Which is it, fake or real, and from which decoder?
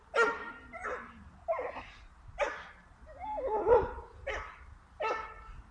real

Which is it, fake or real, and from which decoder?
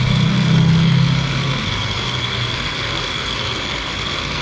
fake, codec, SNAC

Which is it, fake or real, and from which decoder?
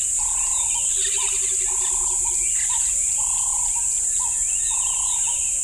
real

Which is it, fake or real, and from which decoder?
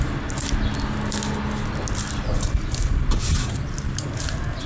real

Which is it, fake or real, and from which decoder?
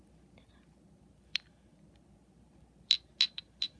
real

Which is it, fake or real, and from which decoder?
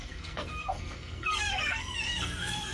fake, codec, SNAC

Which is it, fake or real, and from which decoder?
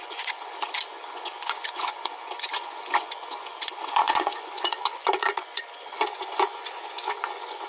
fake, vocoder, Vocos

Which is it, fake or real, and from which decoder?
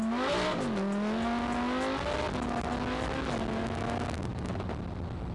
real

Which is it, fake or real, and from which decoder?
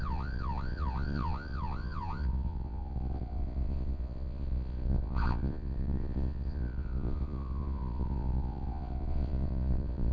fake, vocoder, Vocos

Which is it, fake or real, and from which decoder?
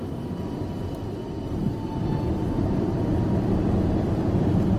real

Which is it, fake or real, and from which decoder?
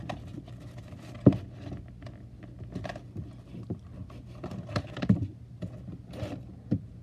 real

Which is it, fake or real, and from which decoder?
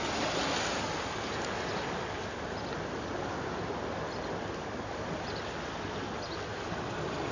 real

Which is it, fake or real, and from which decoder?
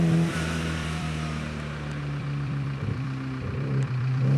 fake, vocoder, BigVGAN v2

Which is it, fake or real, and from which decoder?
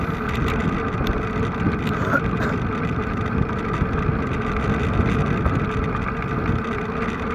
real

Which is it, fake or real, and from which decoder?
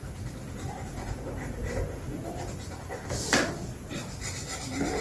real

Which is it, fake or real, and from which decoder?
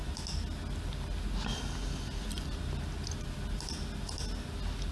real